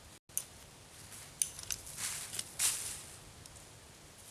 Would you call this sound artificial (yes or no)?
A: no